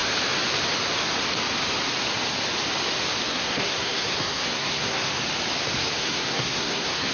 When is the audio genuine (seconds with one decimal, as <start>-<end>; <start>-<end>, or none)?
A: 0.0-3.3; 5.1-6.0